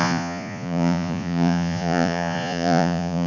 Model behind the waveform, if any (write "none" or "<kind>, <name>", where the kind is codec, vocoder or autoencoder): vocoder, Vocos